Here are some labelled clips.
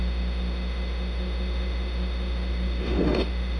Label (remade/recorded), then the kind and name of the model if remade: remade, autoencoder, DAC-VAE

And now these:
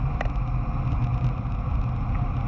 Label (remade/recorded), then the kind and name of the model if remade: recorded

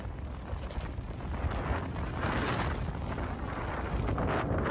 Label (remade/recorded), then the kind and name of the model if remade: recorded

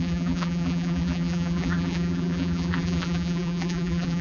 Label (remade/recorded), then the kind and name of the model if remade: remade, vocoder, BigVGAN v2